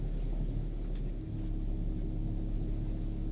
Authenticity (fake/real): real